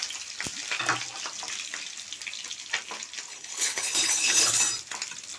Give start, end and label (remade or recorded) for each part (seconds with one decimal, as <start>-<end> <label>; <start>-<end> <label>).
0.0-3.3 recorded; 3.3-4.6 remade; 4.6-5.4 recorded